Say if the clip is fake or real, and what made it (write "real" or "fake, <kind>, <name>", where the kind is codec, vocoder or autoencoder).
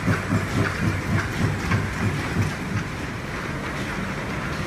real